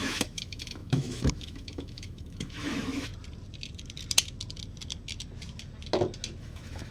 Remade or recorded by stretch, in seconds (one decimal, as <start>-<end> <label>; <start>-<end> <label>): 0.0-3.1 remade; 3.1-6.4 recorded; 6.4-6.9 remade